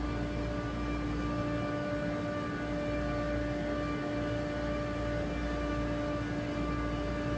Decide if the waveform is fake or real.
real